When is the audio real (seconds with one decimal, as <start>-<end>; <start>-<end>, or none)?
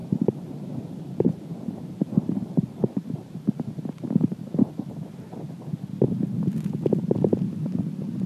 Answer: 5.0-8.3